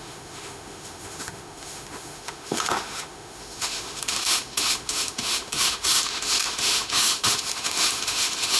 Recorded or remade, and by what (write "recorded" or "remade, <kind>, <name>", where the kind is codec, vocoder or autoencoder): remade, autoencoder, DAC-VAE